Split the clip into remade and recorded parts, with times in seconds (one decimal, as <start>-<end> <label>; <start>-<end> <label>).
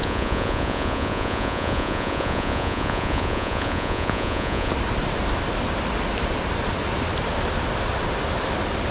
0.0-4.7 remade; 4.7-8.9 recorded